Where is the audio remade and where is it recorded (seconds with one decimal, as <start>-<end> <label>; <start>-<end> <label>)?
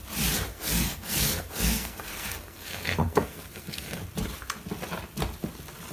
0.0-0.5 recorded; 0.5-4.0 remade; 4.0-5.9 recorded